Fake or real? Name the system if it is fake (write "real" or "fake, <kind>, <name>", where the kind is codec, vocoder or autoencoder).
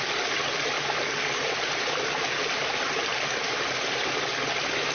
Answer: real